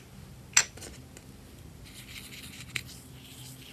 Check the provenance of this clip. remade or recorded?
recorded